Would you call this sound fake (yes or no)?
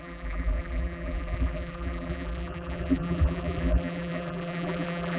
yes